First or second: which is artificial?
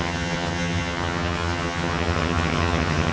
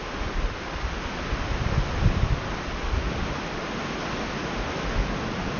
first